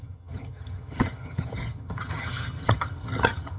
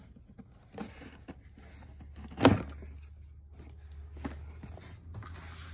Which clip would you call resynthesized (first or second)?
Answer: first